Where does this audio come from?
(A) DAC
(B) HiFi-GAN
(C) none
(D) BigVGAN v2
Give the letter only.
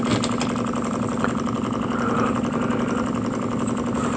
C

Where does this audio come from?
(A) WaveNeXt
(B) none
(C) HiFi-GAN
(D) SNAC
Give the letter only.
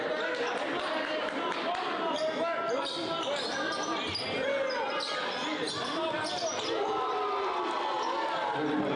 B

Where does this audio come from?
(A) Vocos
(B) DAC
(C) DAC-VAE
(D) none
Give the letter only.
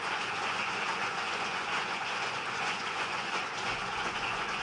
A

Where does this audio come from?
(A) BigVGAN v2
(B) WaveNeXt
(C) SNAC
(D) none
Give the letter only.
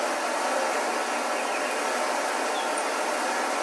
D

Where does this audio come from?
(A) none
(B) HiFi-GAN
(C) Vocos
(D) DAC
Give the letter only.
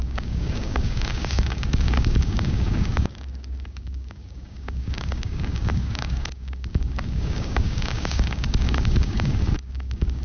D